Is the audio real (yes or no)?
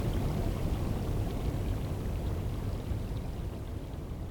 no